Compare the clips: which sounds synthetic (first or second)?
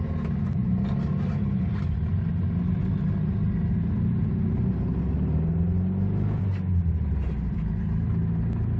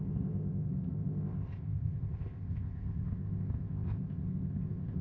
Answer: second